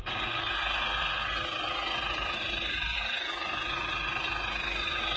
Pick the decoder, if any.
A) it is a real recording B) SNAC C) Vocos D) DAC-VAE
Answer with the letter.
A